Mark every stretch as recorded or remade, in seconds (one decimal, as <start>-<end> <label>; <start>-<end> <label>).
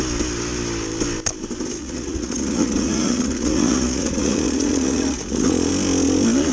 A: 0.0-1.8 recorded; 1.8-5.7 remade; 5.7-6.5 recorded